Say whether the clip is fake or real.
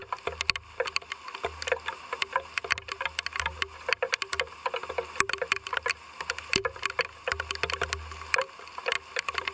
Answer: real